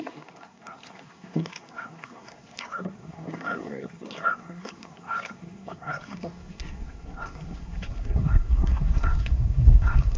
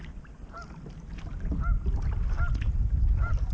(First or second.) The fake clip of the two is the first